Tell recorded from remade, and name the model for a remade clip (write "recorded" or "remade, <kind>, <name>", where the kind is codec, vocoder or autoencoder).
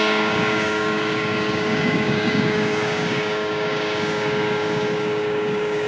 remade, codec, DAC